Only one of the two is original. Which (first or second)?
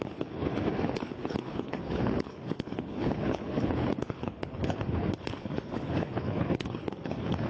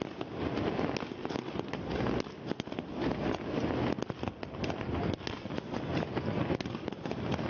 second